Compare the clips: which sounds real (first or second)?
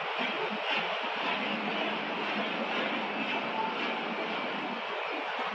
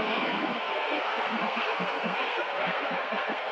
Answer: first